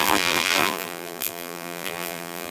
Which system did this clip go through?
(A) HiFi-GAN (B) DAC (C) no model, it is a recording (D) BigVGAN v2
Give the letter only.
D